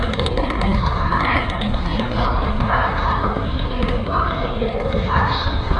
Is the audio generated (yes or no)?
yes